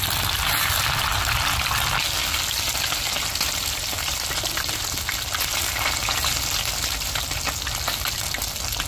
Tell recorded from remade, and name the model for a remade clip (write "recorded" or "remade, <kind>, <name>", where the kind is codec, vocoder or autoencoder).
recorded